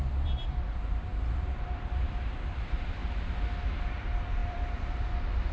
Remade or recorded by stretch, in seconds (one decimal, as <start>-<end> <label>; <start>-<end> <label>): 0.0-3.0 remade; 3.0-3.9 recorded; 3.9-5.5 remade